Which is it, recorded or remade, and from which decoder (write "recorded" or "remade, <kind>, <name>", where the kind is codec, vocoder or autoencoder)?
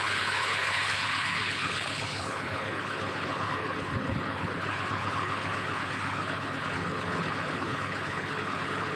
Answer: remade, codec, HILCodec